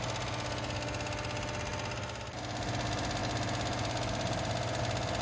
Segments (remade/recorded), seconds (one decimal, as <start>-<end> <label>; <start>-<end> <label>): 0.0-5.2 recorded